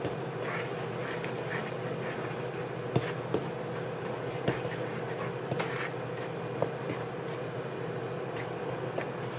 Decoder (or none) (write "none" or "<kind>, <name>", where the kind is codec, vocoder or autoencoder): none